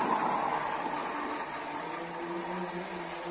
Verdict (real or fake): real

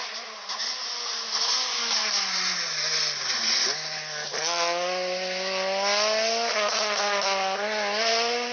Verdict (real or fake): real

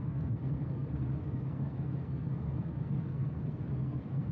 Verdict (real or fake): fake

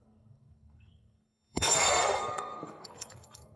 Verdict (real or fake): fake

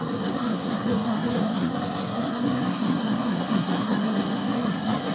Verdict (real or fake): fake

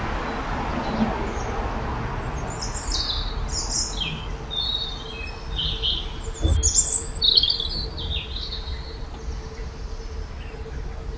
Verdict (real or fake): real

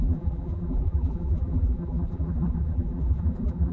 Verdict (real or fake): fake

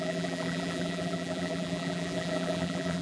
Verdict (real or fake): fake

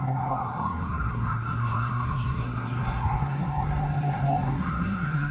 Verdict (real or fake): fake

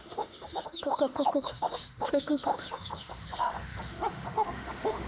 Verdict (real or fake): fake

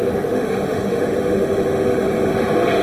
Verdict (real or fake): fake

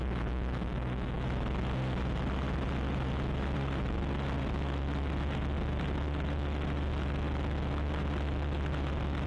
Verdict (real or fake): real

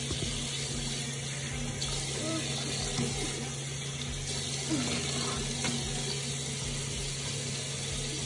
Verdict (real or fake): real